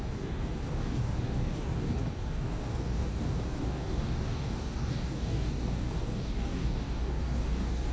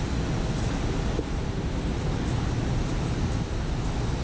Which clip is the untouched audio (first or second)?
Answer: second